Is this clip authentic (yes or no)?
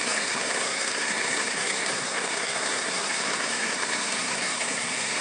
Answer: no